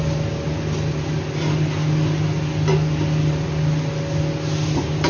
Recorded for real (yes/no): yes